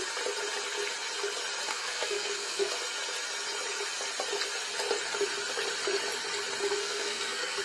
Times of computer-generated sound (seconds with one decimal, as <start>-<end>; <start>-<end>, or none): 1.7-2.7; 6.7-7.6